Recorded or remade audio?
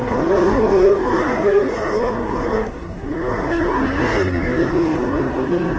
remade